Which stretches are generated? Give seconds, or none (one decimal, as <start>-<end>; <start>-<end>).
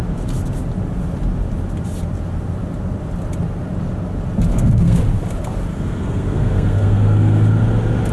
4.5-5.0; 5.7-7.5